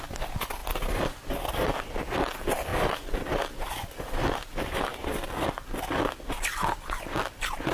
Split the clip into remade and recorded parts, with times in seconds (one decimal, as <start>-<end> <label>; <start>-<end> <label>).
0.0-2.7 recorded; 2.7-3.7 remade; 3.7-7.7 recorded